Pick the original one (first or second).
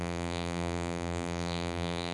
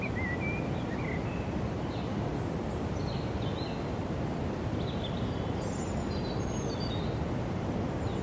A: second